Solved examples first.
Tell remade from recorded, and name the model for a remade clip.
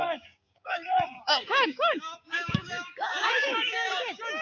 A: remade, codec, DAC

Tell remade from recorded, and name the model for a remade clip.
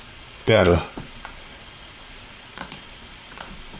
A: remade, vocoder, Vocos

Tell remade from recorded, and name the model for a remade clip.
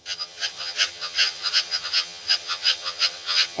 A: remade, vocoder, HiFi-GAN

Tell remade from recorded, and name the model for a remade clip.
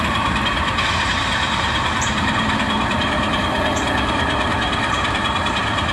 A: remade, vocoder, BigVGAN v2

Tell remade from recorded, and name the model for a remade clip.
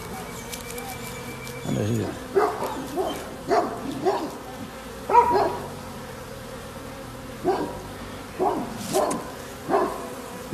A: recorded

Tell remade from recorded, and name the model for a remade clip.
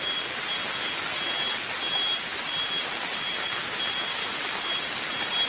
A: recorded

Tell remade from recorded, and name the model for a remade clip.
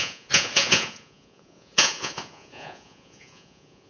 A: remade, vocoder, Vocos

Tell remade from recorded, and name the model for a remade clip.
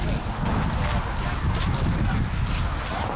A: recorded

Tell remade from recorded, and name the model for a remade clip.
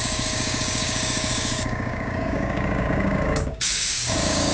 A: remade, codec, DAC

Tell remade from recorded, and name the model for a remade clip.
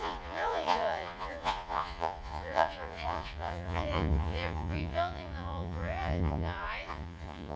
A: remade, vocoder, Vocos